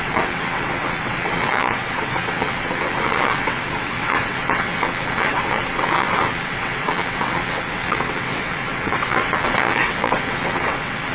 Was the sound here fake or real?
fake